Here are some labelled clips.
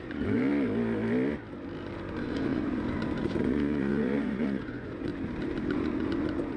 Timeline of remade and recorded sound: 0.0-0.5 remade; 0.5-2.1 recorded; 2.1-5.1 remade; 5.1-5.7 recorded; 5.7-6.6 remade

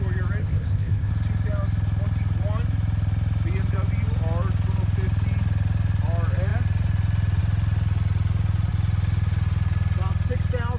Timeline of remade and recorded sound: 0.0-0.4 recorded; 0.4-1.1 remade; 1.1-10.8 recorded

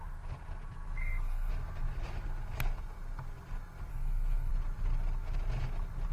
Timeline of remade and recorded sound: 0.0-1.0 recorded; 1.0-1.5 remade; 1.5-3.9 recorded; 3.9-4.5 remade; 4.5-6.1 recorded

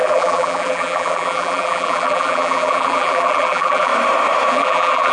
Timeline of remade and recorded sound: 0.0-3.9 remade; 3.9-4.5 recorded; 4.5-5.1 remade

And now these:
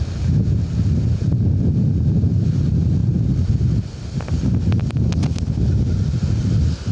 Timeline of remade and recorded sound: 0.0-6.9 recorded

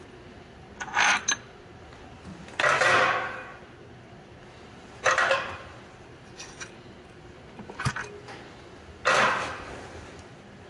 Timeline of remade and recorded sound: 0.0-10.7 recorded

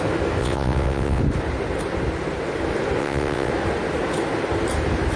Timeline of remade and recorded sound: 0.0-0.4 recorded; 0.4-1.2 remade; 1.2-3.0 recorded; 3.0-3.5 remade; 3.5-5.2 recorded

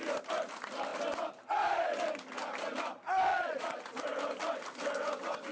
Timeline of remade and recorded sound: 0.0-3.3 recorded; 3.3-3.8 remade; 3.8-5.5 recorded